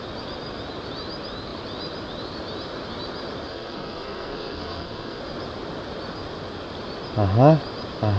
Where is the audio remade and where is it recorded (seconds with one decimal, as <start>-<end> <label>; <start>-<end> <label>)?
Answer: 0.0-3.5 recorded; 3.5-5.2 remade; 5.2-8.2 recorded